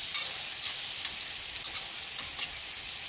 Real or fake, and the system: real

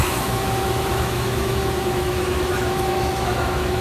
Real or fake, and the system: fake, autoencoder, DAC-VAE